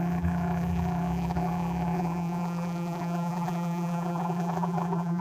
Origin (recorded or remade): remade